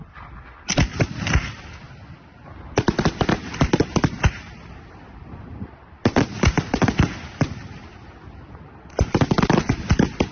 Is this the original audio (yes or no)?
yes